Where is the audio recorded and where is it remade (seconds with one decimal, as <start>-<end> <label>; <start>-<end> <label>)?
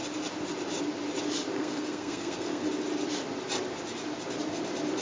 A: 0.0-1.6 recorded; 1.6-2.7 remade; 2.7-5.0 recorded